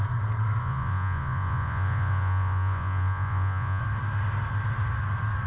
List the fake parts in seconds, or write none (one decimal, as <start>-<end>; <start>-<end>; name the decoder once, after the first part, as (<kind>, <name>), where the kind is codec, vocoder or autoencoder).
0.6-3.8 (vocoder, Vocos)